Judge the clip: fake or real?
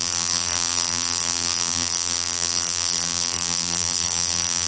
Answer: fake